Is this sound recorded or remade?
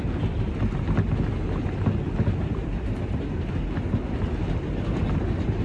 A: recorded